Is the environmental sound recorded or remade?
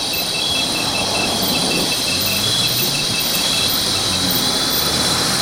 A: remade